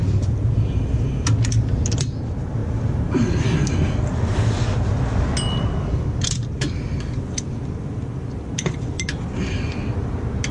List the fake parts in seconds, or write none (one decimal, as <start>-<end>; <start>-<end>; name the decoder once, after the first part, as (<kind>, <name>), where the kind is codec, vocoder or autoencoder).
none